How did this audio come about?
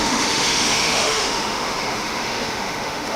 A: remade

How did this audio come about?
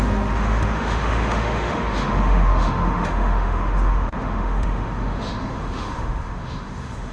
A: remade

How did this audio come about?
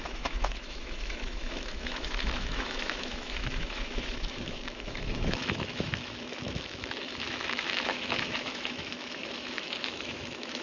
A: remade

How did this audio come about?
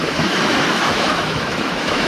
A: remade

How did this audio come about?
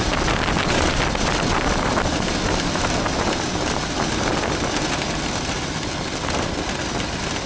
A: recorded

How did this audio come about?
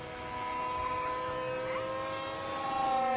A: recorded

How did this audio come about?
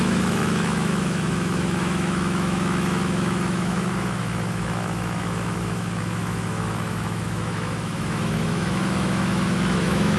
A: remade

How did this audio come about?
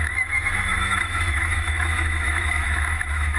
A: remade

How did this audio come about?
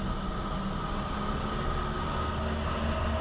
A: recorded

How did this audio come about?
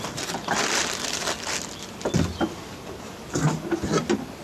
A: recorded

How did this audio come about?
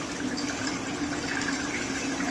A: recorded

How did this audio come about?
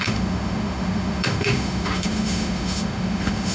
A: remade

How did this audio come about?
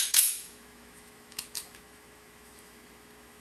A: remade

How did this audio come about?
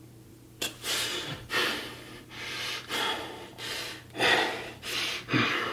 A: recorded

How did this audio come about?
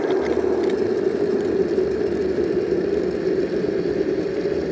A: recorded